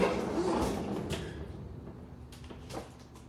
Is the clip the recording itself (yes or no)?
yes